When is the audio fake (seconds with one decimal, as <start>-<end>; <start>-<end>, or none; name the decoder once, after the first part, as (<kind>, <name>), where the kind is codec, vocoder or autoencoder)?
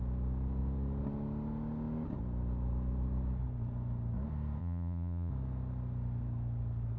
4.6-5.3 (vocoder, Vocos)